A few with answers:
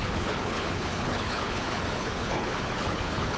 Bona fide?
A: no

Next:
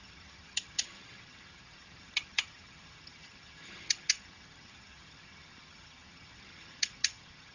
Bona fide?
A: no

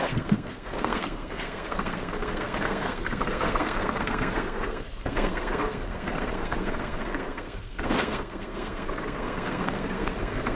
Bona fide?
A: no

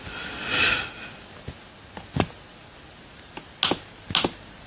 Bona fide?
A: yes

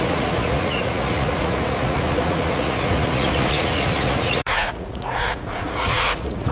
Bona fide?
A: no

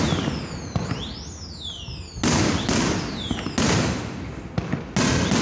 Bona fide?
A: yes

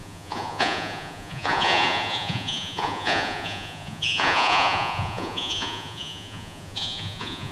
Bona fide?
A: no